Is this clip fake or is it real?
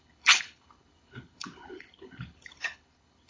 fake